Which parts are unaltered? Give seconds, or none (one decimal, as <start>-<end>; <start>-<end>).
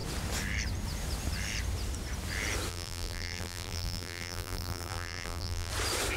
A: 0.0-2.7; 5.7-6.2